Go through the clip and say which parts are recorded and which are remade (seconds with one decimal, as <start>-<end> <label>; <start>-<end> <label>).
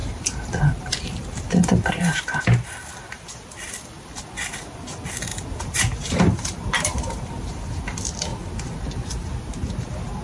0.0-2.4 remade; 2.4-5.3 recorded; 5.3-7.8 remade; 7.8-10.2 recorded